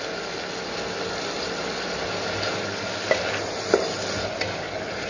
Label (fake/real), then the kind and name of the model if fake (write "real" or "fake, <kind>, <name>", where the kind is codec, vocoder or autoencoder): real